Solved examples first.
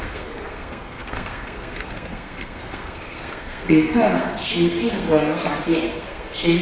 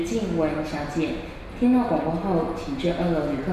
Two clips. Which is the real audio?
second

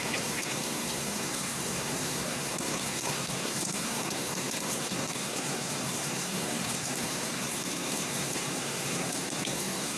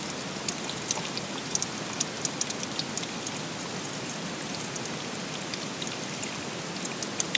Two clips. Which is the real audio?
second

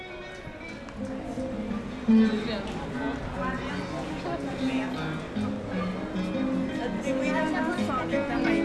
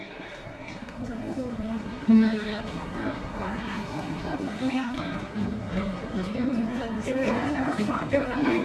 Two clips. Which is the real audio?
first